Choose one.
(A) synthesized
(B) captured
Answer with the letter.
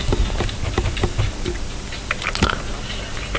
B